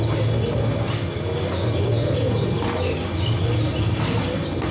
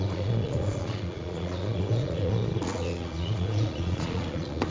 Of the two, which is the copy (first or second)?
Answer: second